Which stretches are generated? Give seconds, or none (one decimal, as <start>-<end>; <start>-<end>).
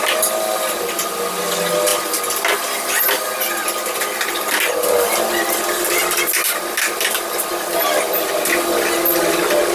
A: none